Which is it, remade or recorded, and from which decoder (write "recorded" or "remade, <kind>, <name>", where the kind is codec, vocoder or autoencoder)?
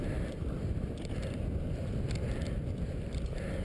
recorded